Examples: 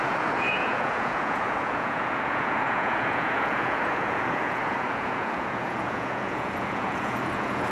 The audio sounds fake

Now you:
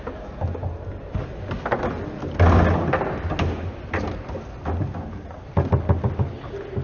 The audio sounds real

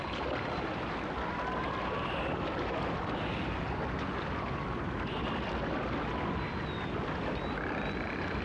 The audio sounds real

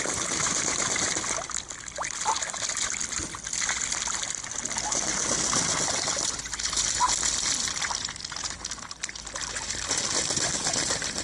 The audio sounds real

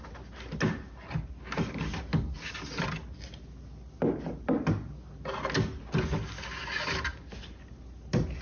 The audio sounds real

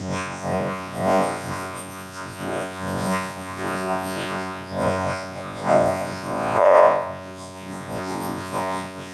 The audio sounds fake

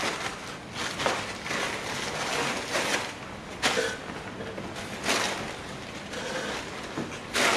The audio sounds real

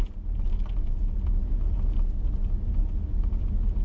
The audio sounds real